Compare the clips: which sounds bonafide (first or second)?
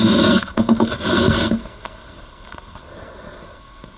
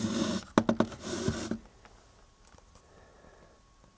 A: second